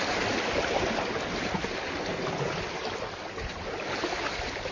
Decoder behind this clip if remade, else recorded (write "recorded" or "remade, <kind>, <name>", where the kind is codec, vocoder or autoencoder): recorded